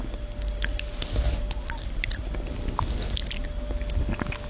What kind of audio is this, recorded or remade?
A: recorded